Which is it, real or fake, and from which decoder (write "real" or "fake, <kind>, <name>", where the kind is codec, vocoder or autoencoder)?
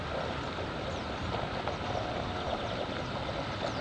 real